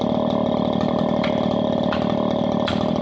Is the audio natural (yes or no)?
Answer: yes